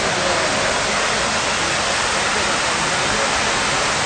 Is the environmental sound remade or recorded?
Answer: recorded